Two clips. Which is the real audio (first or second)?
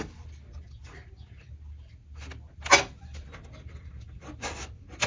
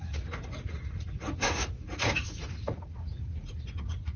first